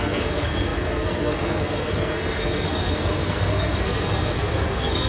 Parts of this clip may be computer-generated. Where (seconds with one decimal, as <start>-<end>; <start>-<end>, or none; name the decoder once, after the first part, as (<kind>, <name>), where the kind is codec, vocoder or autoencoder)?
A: 0.0-5.1 (codec, SNAC)